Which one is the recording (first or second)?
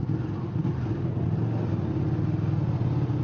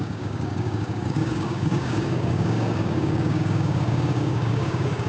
first